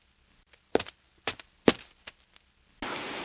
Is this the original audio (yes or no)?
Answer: yes